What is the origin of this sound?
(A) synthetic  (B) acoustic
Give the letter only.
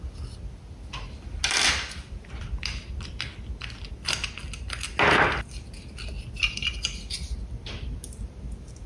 B